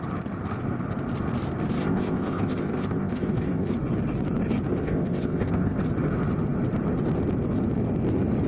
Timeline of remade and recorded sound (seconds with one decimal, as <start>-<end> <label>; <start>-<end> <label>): 0.0-1.8 recorded; 1.8-3.7 remade; 3.7-4.7 recorded; 4.7-5.8 remade; 5.8-8.5 recorded